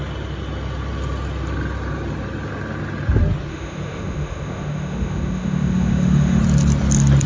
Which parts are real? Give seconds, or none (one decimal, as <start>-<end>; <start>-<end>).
0.0-3.5; 6.4-7.3